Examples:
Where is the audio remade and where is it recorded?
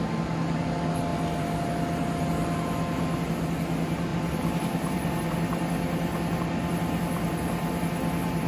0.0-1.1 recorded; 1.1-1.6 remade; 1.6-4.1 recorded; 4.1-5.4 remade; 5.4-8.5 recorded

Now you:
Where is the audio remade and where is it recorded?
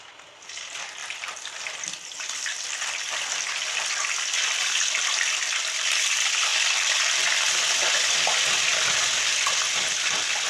0.0-1.0 recorded; 1.0-4.0 remade; 4.0-10.5 recorded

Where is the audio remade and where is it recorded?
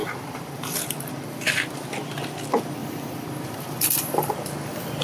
0.0-1.1 remade; 1.1-2.8 recorded; 2.8-4.3 remade; 4.3-5.0 recorded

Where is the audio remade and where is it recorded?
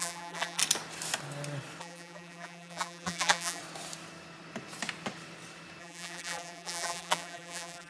0.0-0.6 remade; 0.6-1.8 recorded; 1.8-3.6 remade; 3.6-5.8 recorded; 5.8-7.9 remade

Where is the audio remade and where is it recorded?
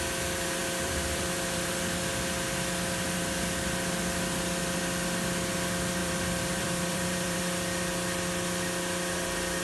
0.0-0.6 recorded; 0.6-1.7 remade; 1.7-6.0 recorded; 6.0-7.4 remade; 7.4-9.6 recorded